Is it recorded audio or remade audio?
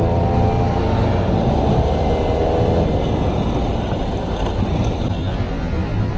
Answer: recorded